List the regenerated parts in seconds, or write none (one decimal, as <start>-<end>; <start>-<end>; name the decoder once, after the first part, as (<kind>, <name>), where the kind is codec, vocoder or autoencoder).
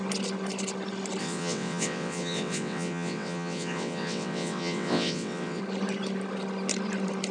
1.2-5.6 (vocoder, WaveNeXt)